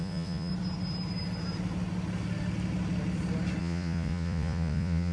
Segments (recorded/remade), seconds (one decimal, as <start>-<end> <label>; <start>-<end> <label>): 0.0-0.5 remade; 0.5-3.6 recorded; 3.6-5.1 remade